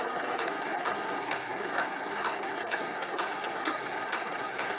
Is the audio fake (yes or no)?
yes